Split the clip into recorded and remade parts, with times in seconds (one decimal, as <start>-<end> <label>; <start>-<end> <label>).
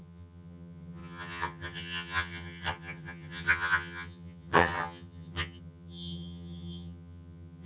0.0-7.7 remade